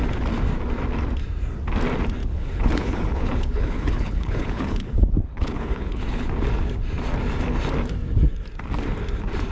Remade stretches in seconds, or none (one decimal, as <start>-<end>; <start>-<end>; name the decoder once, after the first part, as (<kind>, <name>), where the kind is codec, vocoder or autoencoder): 2.2-6.3 (codec, HILCodec)